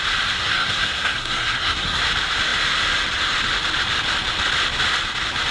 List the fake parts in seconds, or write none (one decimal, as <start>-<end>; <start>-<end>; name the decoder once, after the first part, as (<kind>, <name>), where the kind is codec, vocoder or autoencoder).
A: 0.4-2.0 (codec, SNAC)